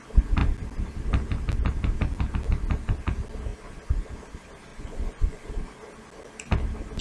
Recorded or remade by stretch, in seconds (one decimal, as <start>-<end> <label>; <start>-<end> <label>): 0.0-4.7 recorded; 4.7-5.5 remade; 5.5-7.0 recorded